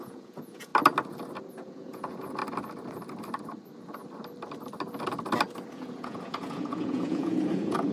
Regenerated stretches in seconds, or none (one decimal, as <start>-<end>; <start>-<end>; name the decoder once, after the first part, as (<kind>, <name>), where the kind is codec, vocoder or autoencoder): 0.0-0.7 (vocoder, Vocos); 1.5-2.4; 5.7-7.9